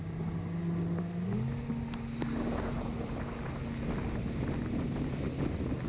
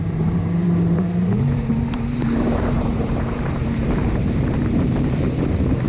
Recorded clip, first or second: first